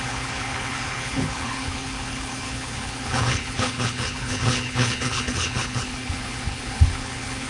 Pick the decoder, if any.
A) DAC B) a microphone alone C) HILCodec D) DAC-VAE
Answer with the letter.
C